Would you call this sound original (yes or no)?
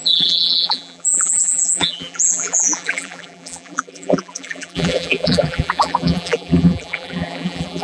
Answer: no